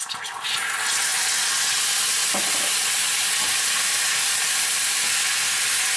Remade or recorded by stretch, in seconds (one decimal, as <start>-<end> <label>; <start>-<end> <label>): 0.0-6.0 recorded